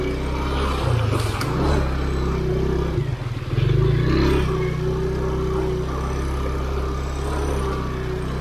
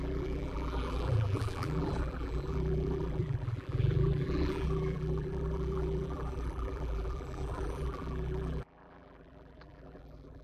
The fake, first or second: second